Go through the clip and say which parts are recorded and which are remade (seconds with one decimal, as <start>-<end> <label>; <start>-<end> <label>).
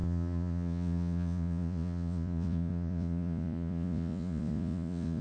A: 0.0-5.2 remade